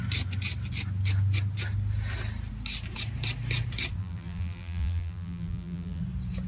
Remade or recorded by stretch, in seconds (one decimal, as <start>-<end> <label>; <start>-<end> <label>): 0.0-4.0 recorded; 4.0-6.0 remade; 6.0-6.5 recorded